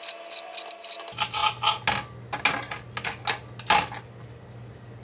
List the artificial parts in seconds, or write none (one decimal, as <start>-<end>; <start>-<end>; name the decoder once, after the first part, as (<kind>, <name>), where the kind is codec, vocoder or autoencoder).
none